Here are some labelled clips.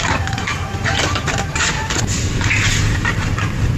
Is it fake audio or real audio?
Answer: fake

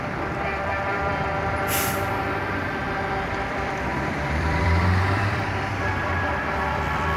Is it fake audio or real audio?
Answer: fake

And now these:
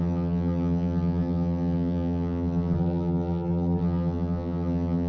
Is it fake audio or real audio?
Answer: fake